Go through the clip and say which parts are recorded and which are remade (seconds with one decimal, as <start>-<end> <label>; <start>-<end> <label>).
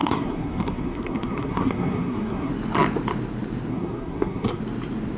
0.0-2.5 remade; 2.5-3.7 recorded; 3.7-4.6 remade; 4.6-5.2 recorded